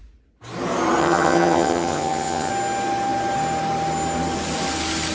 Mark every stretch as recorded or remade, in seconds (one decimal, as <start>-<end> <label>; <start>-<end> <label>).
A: 0.0-1.0 recorded; 1.0-2.5 remade; 2.5-5.1 recorded